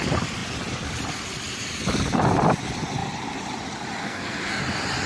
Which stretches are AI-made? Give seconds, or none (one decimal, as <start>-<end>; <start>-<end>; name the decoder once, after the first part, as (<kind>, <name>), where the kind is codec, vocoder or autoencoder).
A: 4.0-4.6 (codec, SNAC)